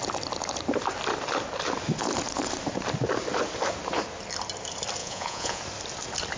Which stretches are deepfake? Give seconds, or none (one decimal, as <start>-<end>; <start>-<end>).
5.0-5.6